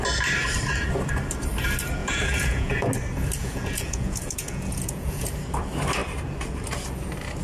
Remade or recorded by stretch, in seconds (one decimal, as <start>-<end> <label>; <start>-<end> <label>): 0.0-2.0 recorded; 2.0-2.9 remade; 2.9-3.4 recorded; 3.4-5.3 remade; 5.3-7.4 recorded